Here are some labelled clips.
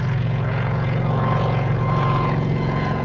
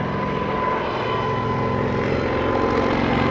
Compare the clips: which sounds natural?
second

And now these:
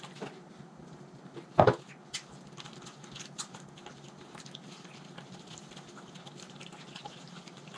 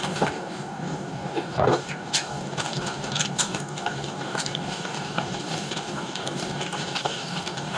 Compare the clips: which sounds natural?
first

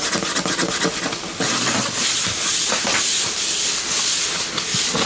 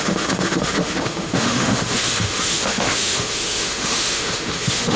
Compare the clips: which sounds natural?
first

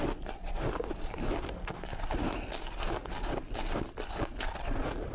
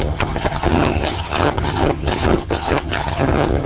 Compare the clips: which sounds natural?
first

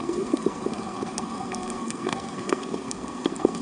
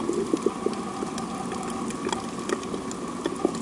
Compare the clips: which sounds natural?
second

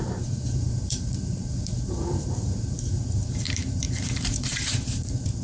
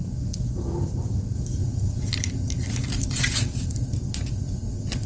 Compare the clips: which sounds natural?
second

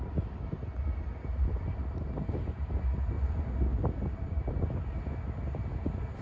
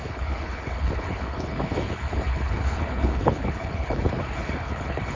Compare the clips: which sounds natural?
first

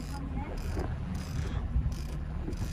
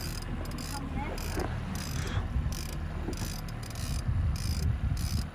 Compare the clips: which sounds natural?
second